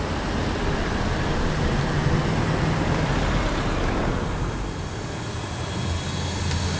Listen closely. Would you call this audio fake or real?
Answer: real